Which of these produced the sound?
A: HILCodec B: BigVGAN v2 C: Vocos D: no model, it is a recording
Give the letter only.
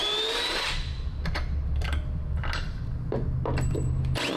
D